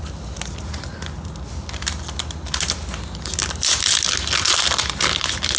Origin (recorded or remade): recorded